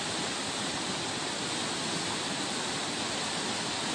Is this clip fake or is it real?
real